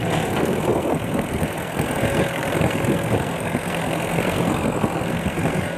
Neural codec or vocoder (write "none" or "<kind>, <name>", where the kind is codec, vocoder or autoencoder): codec, SNAC